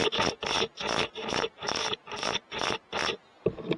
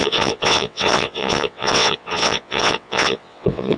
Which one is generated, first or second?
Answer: second